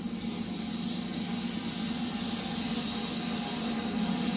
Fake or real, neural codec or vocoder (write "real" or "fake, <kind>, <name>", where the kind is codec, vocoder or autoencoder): real